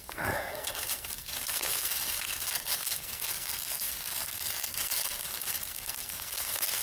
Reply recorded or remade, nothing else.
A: remade